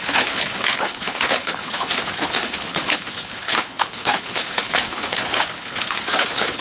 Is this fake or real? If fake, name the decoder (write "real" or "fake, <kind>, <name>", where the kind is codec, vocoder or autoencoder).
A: fake, codec, HILCodec